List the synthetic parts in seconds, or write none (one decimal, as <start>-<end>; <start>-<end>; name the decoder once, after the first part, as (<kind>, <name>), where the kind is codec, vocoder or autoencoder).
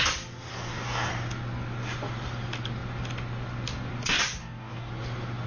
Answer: 0.5-1.1 (codec, DAC); 4.4-4.9